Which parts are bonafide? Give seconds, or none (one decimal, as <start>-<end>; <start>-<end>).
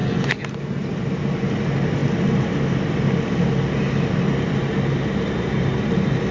0.0-6.3